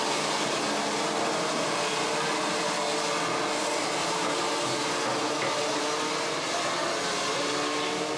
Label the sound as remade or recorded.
recorded